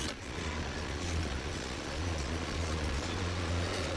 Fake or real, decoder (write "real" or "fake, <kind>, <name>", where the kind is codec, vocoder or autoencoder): fake, vocoder, Vocos